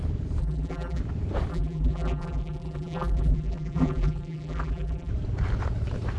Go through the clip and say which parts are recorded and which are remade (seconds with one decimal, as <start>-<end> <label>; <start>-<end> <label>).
0.0-0.4 recorded; 0.4-1.0 remade; 1.0-1.5 recorded; 1.5-5.1 remade; 5.1-6.2 recorded